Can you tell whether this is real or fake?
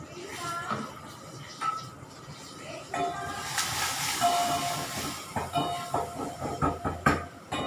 real